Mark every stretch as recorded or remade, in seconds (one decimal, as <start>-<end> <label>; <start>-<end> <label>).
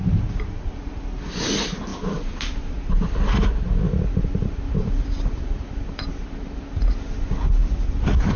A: 0.0-1.9 recorded; 1.9-6.9 remade; 6.9-7.6 recorded; 7.6-8.4 remade